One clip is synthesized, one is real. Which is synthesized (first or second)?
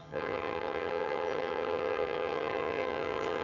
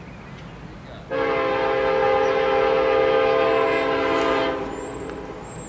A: first